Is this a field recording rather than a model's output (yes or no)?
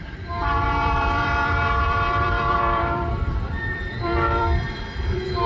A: no